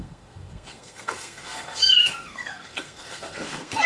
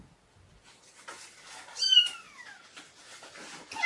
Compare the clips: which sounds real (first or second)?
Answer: second